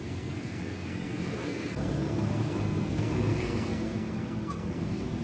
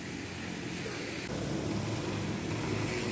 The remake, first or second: first